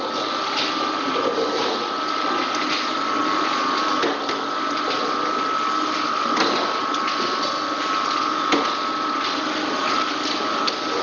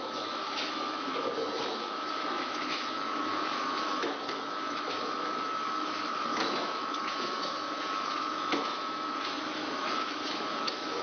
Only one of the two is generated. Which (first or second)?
second